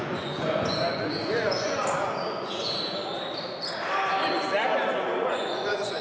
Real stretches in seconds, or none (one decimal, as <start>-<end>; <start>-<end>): 1.8-2.3; 3.0-5.2